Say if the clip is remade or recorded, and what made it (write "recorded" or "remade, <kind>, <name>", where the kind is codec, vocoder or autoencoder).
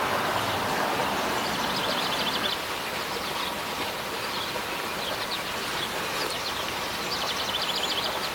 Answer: remade, vocoder, BigVGAN v2